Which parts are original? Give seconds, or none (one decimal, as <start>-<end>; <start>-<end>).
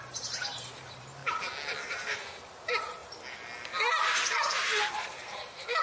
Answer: 1.2-1.8; 3.0-4.5